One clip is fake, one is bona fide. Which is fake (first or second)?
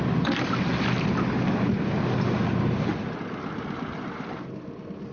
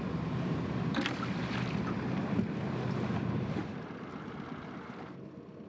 second